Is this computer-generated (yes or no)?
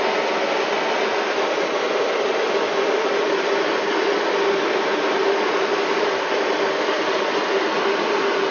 no